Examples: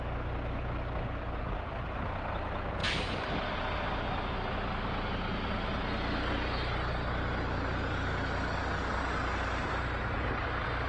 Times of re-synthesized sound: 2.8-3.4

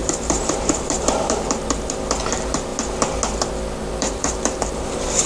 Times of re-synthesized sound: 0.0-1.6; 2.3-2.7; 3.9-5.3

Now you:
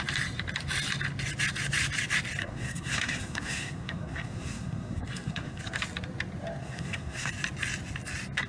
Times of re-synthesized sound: 2.4-5.6; 6.6-7.3

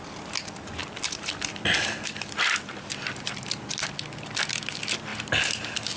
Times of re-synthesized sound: none

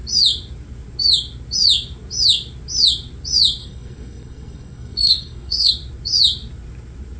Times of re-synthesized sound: 3.6-5.7